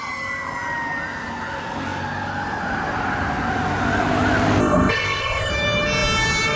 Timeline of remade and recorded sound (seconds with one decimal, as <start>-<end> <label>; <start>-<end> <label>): 0.0-4.6 recorded; 4.6-5.5 remade; 5.5-6.6 recorded